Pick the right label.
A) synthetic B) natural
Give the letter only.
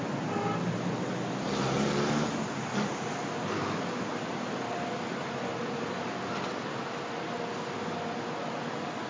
B